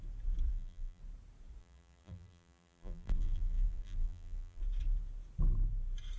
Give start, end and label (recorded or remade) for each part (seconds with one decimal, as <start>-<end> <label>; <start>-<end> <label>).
0.0-0.5 recorded; 0.5-1.0 remade; 1.0-1.6 recorded; 1.6-4.6 remade; 4.6-6.2 recorded